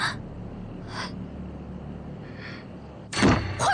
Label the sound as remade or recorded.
recorded